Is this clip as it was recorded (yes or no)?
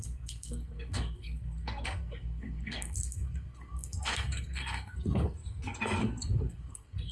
no